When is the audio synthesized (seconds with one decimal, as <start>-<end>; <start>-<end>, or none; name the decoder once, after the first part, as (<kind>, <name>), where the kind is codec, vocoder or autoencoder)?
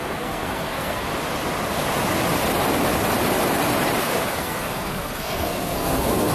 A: 0.0-1.1 (codec, SNAC); 4.0-6.3